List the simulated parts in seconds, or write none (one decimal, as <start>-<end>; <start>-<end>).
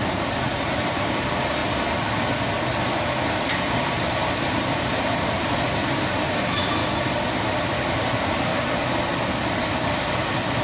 0.0-1.6; 4.3-6.8; 7.4-8.5; 9.6-10.6